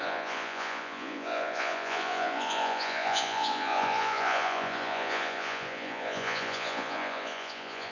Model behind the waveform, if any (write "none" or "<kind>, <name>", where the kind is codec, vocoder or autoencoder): vocoder, Vocos